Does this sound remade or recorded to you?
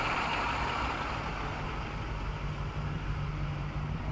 recorded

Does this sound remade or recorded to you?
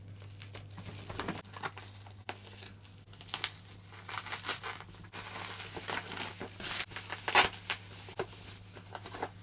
recorded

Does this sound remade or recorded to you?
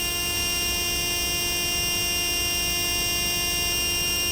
recorded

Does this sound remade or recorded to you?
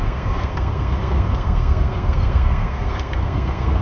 remade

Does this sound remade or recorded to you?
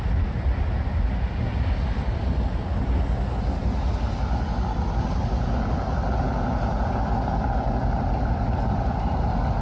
recorded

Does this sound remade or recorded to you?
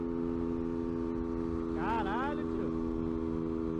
recorded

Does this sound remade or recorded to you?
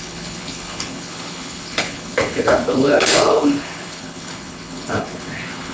remade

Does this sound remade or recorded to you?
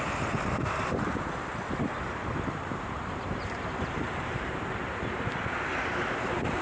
remade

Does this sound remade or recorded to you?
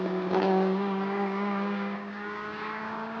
remade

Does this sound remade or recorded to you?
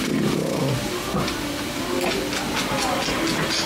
recorded